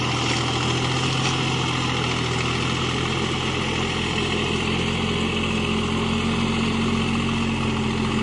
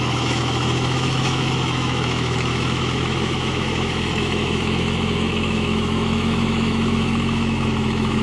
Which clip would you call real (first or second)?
first